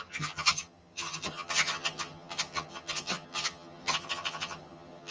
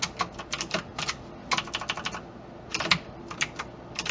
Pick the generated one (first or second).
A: first